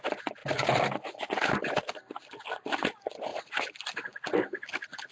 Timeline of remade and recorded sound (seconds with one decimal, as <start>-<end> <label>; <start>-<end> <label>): 0.0-5.1 recorded